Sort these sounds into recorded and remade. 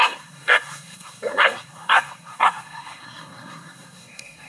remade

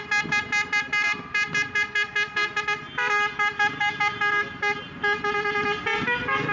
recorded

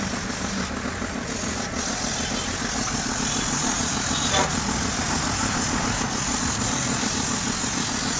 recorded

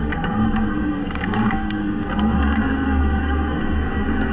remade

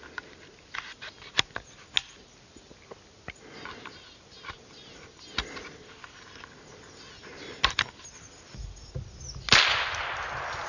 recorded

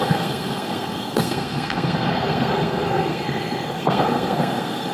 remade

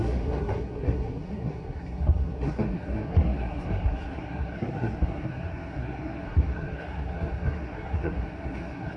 remade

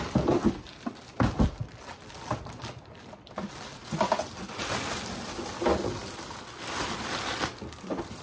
recorded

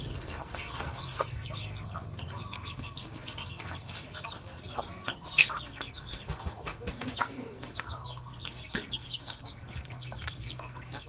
remade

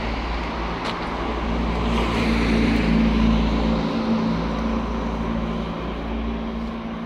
recorded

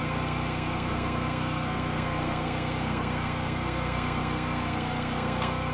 remade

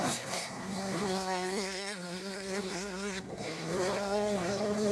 remade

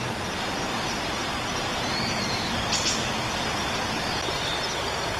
recorded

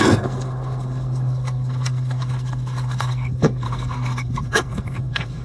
remade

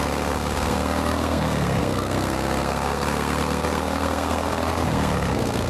remade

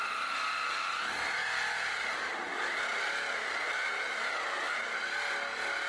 recorded